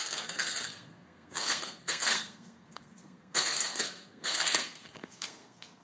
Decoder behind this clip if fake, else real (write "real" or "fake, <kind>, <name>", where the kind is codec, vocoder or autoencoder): fake, codec, SNAC